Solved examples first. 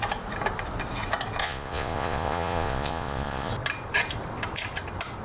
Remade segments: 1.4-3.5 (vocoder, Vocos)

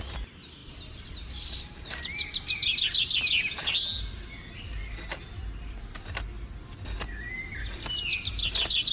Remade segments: 0.6-1.9 (vocoder, BigVGAN v2)